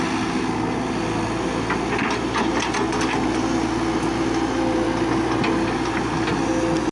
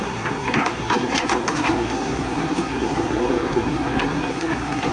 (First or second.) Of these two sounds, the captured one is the first